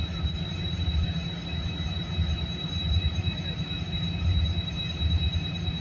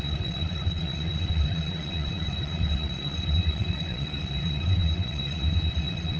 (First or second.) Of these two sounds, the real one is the first